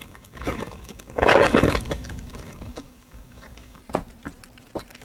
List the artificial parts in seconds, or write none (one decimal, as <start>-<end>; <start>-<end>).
0.0-3.8